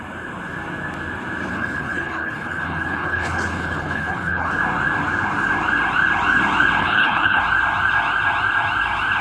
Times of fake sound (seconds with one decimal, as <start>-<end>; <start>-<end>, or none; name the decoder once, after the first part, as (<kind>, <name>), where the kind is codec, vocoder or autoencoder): 1.5-4.5 (codec, HILCodec); 6.8-7.4